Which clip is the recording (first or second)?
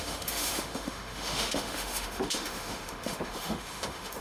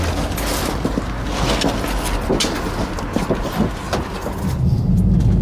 second